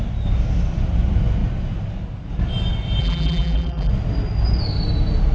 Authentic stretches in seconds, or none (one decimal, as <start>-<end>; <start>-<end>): 0.0-3.0; 3.9-5.3